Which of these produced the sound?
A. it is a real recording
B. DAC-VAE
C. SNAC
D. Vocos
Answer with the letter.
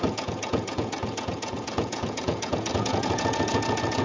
D